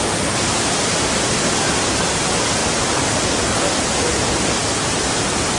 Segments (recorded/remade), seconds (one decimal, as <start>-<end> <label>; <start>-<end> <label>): 0.0-5.6 recorded